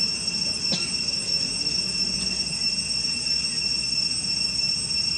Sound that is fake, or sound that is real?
real